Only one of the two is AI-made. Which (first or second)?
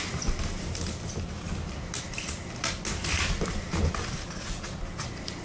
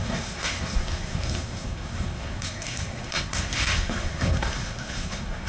second